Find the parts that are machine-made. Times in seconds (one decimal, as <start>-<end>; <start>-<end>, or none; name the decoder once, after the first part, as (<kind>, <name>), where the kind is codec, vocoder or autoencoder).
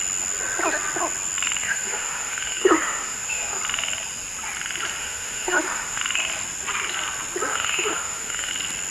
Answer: 1.6-3.6 (autoencoder, DAC-VAE); 5.0-6.0; 7.5-8.5